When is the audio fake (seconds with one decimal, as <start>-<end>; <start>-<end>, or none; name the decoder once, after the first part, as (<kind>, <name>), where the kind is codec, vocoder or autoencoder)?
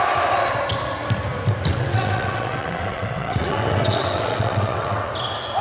1.7-5.1 (vocoder, WaveNeXt)